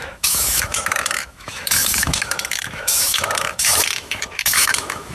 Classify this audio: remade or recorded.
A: remade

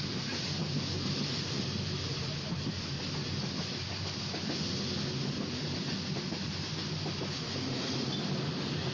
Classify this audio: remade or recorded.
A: recorded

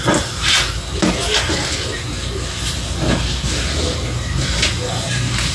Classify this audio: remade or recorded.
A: recorded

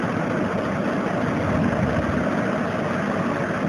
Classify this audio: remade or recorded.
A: recorded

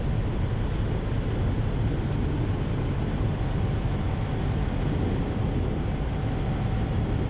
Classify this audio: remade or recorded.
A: recorded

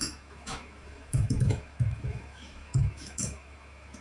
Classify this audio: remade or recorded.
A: remade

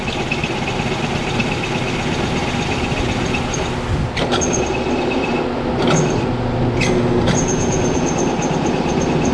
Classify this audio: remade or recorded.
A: recorded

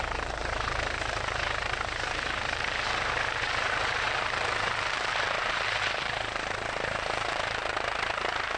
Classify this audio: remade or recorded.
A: remade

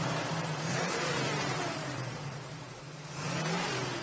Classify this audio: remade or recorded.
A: remade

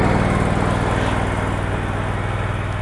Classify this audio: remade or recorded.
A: recorded